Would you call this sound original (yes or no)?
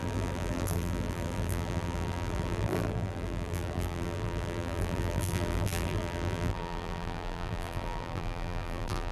no